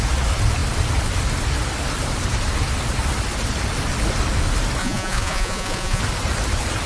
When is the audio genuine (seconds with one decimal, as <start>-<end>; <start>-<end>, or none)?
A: 0.0-4.8; 6.0-6.9